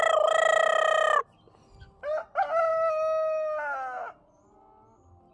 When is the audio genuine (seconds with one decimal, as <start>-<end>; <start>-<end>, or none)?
0.0-5.3